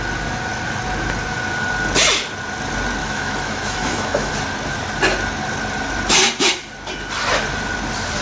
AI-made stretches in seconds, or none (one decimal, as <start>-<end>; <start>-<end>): 3.0-4.3

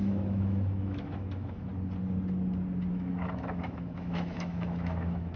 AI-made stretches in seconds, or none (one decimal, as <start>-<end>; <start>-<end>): 0.0-1.7; 2.9-5.4

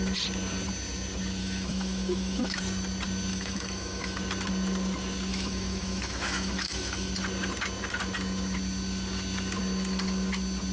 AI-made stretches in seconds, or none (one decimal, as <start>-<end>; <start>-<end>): 1.4-2.6; 3.3-4.2; 5.3-7.1

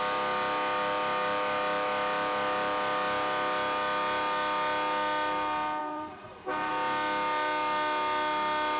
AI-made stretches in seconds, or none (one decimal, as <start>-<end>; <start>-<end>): 5.8-6.7